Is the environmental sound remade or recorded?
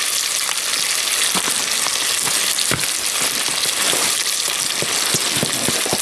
recorded